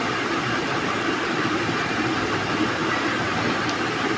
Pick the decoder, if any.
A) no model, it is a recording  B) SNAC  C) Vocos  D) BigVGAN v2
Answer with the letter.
A